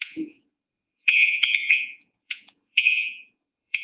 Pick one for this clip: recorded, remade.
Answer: remade